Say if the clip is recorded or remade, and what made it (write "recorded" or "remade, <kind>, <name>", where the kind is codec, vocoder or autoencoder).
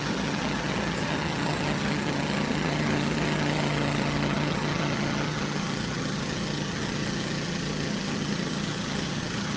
remade, vocoder, HiFi-GAN